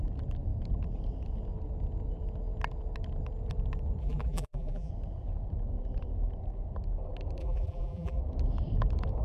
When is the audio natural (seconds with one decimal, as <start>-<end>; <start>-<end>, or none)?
0.0-4.0; 4.9-7.4; 8.2-9.2